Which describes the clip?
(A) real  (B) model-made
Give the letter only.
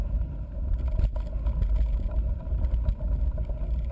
A